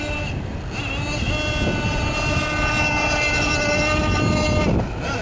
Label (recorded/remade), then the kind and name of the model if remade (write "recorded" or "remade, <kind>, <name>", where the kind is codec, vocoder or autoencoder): recorded